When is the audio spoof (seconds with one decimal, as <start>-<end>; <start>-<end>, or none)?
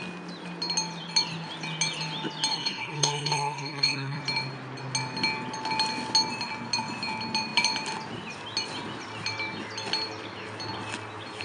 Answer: 2.5-4.2